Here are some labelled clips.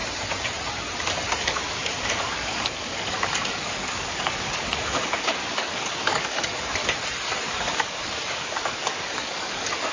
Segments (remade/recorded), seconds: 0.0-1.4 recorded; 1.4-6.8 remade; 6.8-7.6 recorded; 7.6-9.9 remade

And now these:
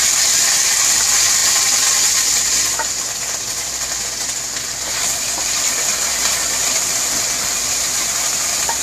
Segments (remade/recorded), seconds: 0.0-8.8 remade

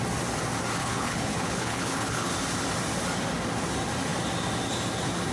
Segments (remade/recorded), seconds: 0.0-0.8 recorded; 0.8-2.3 remade; 2.3-5.3 recorded